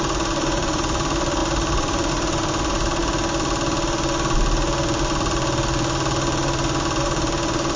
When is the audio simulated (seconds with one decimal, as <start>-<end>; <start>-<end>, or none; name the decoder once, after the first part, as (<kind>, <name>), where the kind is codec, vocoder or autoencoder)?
0.0-3.0 (vocoder, BigVGAN v2); 7.0-7.8